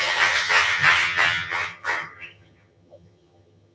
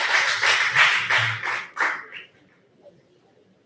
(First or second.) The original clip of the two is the second